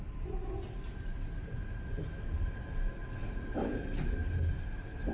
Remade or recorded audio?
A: recorded